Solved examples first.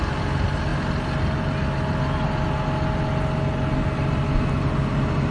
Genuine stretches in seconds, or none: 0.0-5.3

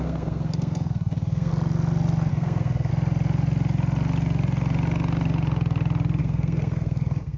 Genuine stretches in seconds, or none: 1.5-2.3; 2.9-6.2

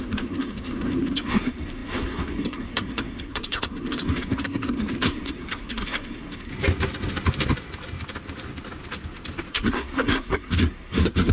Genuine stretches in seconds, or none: 6.5-9.5

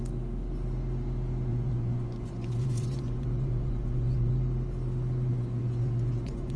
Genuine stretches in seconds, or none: 0.0-1.5; 4.3-5.3

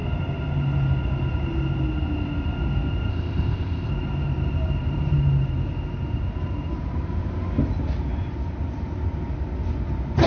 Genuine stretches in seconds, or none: 0.0-3.1; 3.9-10.3

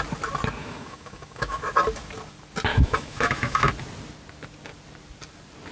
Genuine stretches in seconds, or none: 0.0-0.6; 1.6-2.7; 3.7-5.7